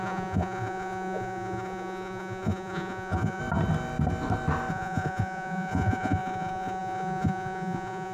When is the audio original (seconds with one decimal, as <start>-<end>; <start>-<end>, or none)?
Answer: 3.4-4.7